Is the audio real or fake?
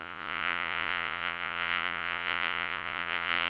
fake